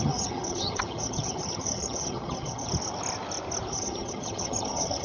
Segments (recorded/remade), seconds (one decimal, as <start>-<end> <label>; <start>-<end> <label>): 0.0-2.7 remade; 2.7-3.7 recorded; 3.7-5.0 remade

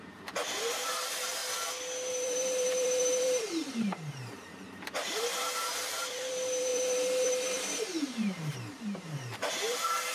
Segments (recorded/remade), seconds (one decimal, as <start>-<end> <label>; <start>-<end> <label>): 0.0-1.4 remade; 1.4-2.1 recorded; 2.1-10.1 remade

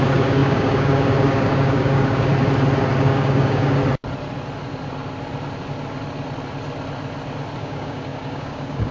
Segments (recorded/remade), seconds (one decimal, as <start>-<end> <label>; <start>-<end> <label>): 0.0-2.3 remade; 2.3-3.0 recorded; 3.0-3.8 remade; 3.8-7.6 recorded; 7.6-8.9 remade

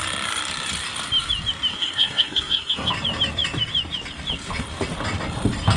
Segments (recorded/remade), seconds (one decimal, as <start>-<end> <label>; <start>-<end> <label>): 0.0-1.7 recorded; 1.7-2.9 remade; 2.9-5.8 recorded